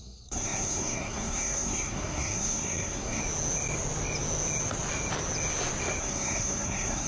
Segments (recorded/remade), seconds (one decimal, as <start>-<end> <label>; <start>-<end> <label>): 0.0-3.2 remade; 3.2-6.0 recorded; 6.0-7.1 remade